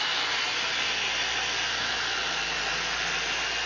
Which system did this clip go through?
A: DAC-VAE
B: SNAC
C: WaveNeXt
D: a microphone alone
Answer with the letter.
D